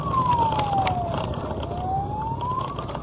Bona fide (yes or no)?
yes